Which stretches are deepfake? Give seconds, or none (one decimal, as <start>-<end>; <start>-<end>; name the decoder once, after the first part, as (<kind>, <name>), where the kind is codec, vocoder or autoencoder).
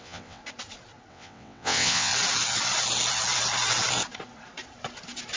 0.0-0.4 (vocoder, WaveNeXt); 1.1-2.1